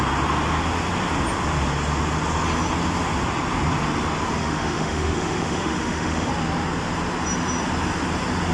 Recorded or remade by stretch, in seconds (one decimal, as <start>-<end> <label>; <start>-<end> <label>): 0.0-4.4 recorded; 4.4-6.3 remade; 6.3-8.5 recorded